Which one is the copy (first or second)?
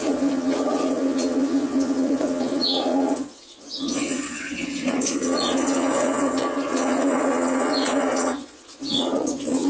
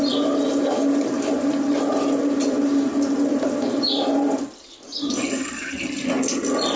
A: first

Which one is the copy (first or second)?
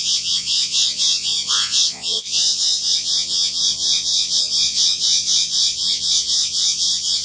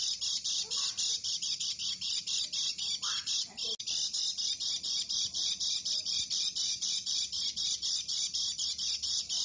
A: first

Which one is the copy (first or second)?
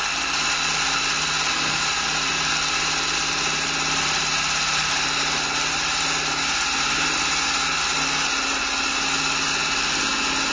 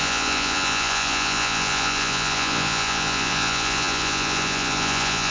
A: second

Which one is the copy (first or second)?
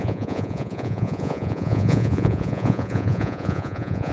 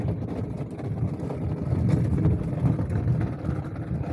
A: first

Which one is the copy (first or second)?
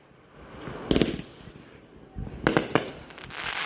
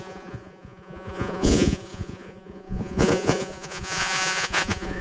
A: second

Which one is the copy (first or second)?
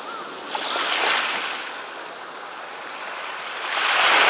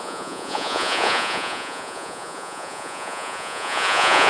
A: second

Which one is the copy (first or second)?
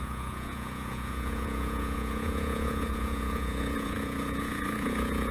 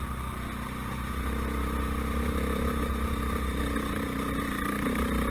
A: first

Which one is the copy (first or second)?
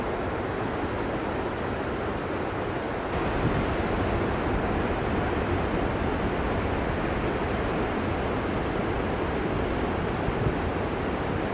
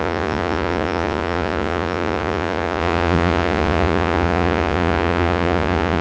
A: second